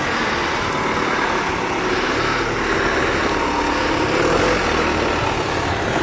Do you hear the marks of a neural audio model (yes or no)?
no